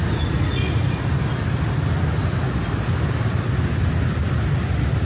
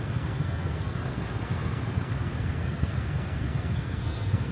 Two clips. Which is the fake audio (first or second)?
second